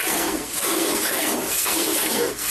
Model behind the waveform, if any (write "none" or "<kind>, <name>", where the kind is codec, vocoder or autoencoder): codec, SNAC